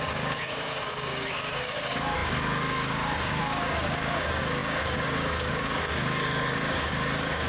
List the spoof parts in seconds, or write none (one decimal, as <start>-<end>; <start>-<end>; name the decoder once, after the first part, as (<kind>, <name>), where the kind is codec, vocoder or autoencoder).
0.0-7.5 (codec, DAC)